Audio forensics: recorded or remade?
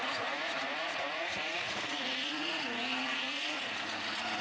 remade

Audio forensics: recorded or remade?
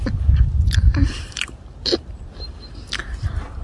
recorded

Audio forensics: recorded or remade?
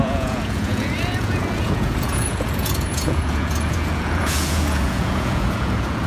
remade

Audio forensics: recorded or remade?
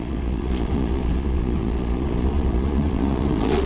remade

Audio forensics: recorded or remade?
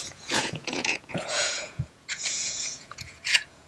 remade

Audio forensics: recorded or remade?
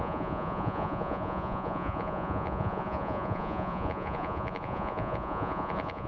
remade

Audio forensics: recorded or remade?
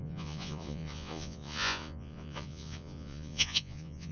remade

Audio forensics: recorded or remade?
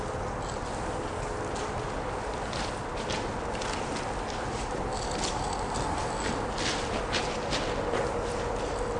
recorded